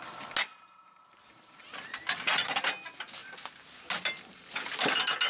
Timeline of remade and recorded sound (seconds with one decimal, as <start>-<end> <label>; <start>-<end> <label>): 0.0-5.3 recorded